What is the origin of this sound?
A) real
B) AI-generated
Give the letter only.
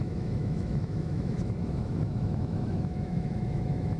B